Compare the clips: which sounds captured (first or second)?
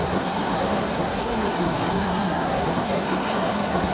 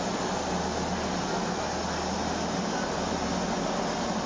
second